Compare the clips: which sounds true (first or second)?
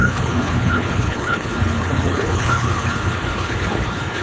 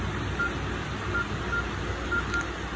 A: second